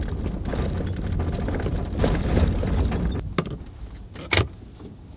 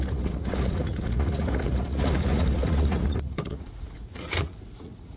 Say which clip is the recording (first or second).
first